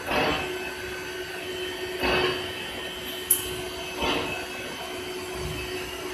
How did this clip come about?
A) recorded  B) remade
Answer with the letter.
A